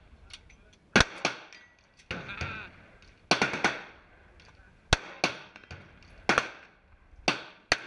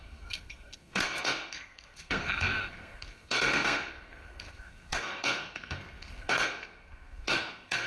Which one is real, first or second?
first